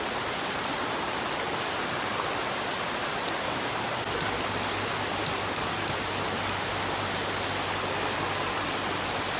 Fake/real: real